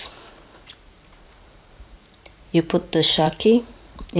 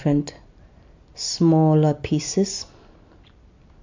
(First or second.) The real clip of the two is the second